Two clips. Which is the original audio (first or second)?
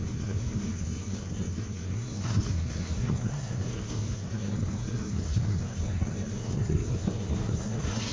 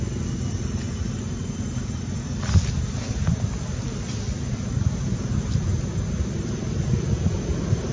second